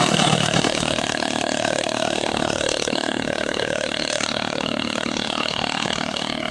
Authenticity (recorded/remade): remade